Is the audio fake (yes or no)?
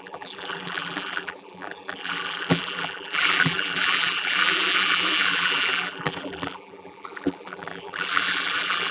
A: yes